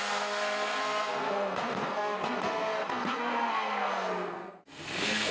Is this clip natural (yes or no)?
no